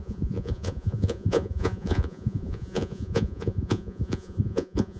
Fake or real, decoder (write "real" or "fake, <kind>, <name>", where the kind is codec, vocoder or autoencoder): fake, vocoder, Vocos